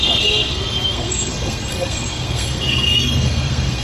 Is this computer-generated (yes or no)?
yes